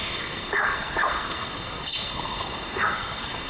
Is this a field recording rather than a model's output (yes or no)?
no